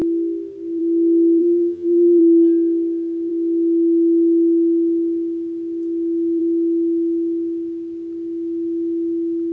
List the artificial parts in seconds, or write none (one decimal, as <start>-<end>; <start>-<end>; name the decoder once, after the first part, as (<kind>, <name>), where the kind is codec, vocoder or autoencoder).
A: 1.4-2.2 (vocoder, HiFi-GAN)